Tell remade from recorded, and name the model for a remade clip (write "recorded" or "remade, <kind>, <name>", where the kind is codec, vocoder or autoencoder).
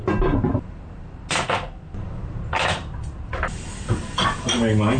recorded